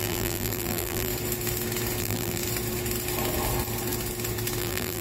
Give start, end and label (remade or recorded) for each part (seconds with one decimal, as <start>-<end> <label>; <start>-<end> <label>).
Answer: 0.0-1.1 remade; 1.1-2.0 recorded; 2.0-2.4 remade; 2.4-4.6 recorded; 4.6-5.0 remade